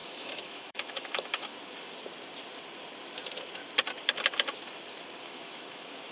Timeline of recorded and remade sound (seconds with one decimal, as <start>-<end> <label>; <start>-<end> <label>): 0.0-1.5 remade; 1.5-5.2 recorded; 5.2-6.1 remade